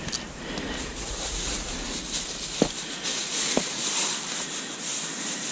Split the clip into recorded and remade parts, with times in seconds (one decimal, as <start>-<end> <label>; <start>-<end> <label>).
0.0-0.9 recorded; 0.9-1.5 remade; 1.5-3.1 recorded; 3.1-3.8 remade; 3.8-5.5 recorded